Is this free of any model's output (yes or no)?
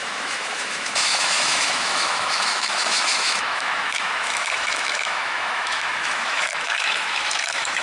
no